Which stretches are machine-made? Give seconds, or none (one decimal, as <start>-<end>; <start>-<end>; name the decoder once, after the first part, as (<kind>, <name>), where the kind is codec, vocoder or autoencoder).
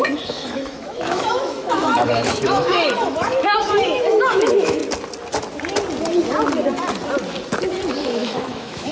0.0-4.8 (autoencoder, DAC-VAE); 8.0-8.9